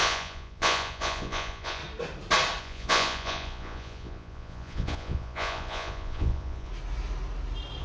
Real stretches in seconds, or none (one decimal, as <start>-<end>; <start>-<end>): 1.8-2.6; 6.7-7.8